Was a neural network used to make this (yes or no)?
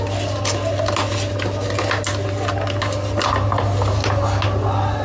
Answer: no